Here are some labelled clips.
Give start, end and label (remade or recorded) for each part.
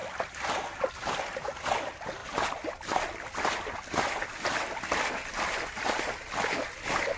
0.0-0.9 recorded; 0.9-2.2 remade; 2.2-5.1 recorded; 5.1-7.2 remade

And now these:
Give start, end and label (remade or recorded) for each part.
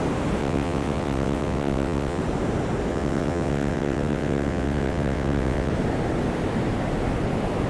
0.0-0.4 recorded; 0.4-2.2 remade; 2.2-2.9 recorded; 2.9-5.7 remade; 5.7-7.7 recorded